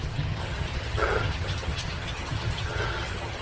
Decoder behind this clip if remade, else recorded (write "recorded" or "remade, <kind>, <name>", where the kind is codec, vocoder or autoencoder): remade, vocoder, HiFi-GAN